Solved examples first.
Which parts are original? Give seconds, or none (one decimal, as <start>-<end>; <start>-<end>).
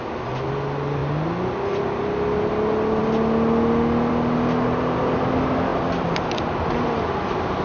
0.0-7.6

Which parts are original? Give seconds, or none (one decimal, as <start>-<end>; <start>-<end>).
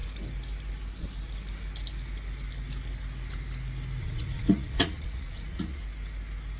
0.0-4.0; 5.8-6.6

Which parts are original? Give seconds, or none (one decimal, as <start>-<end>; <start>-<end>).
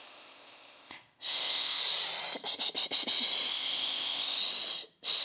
1.8-3.5; 4.4-5.2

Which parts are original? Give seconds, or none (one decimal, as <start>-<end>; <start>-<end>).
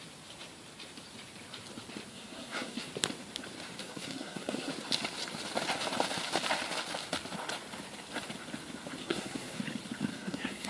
0.0-2.1; 2.9-3.8; 4.7-9.0; 9.6-10.1